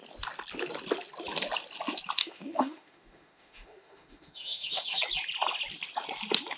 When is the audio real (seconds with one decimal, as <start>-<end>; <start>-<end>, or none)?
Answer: 0.0-2.2; 5.0-6.6